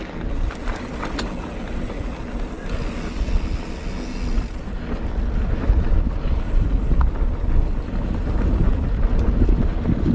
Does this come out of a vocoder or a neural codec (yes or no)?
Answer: no